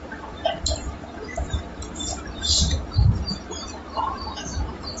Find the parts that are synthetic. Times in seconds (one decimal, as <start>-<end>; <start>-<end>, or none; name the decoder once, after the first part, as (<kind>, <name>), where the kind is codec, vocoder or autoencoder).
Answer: 0.0-5.0 (vocoder, BigVGAN v2)